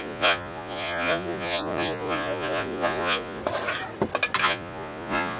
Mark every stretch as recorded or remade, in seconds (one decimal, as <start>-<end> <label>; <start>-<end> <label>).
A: 0.0-3.4 remade; 3.4-4.4 recorded; 4.4-5.4 remade